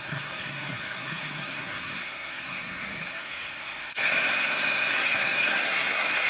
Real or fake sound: fake